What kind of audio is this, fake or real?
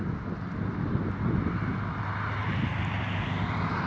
real